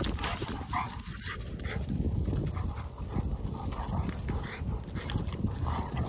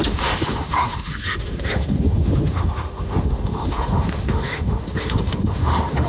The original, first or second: first